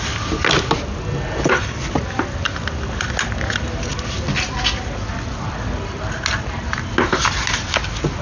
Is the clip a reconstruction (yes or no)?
no